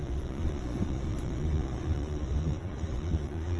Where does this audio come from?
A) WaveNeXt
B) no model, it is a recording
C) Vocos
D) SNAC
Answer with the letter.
C